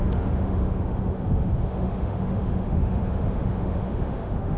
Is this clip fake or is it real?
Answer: fake